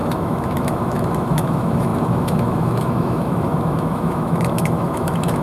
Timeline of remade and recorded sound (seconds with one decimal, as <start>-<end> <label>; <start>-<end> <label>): 0.0-5.4 remade